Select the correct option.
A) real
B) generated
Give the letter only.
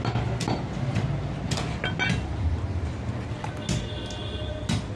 A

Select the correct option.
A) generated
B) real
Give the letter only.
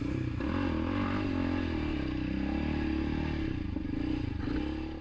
B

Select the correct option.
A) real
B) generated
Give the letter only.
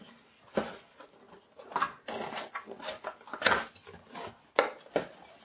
A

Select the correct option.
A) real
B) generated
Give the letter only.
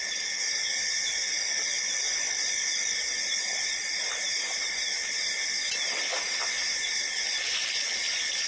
A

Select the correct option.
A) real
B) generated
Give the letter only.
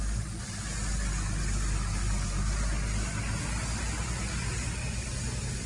A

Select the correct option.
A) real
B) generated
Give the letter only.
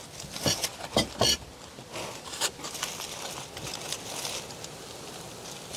A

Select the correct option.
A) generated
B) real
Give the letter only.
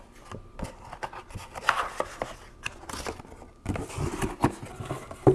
B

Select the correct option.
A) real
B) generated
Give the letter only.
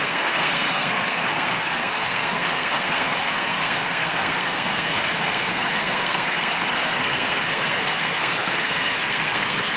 B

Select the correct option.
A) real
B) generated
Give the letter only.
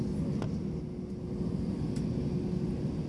A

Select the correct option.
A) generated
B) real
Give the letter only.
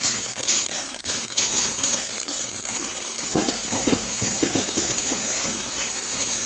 A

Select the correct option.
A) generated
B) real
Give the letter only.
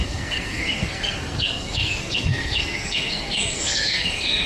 A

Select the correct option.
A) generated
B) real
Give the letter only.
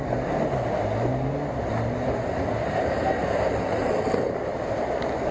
B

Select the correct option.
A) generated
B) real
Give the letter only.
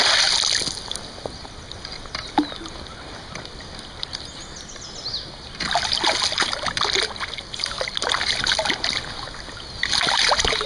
B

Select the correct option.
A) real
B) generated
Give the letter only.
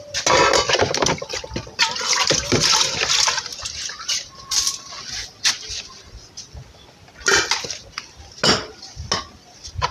A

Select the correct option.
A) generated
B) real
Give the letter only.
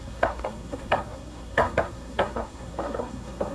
A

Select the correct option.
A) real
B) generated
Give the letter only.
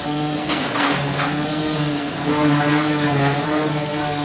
B